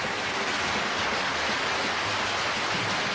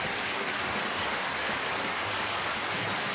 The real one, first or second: first